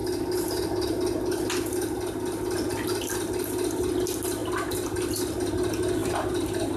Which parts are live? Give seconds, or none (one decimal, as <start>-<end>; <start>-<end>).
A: 0.0-6.0